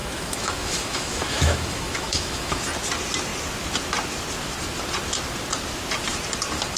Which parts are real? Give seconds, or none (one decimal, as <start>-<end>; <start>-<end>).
2.6-6.8